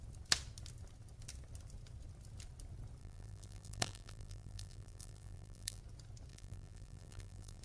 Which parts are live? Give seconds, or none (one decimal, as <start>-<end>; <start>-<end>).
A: 0.0-3.0; 5.8-6.3